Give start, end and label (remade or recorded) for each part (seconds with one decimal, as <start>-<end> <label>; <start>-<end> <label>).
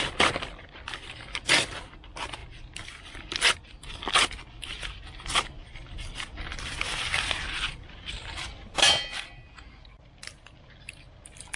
0.0-11.6 recorded